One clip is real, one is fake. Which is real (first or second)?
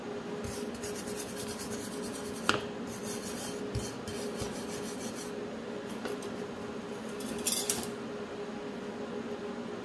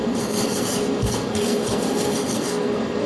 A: first